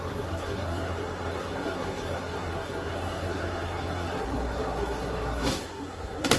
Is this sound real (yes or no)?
no